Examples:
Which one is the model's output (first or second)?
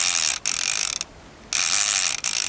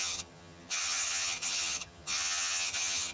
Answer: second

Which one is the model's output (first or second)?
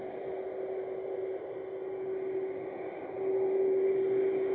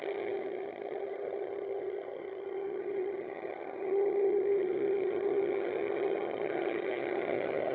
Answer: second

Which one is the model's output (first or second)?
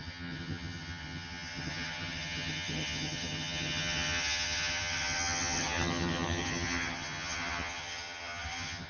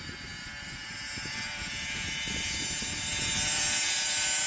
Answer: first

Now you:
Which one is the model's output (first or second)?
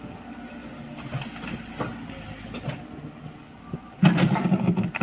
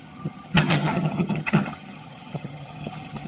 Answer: second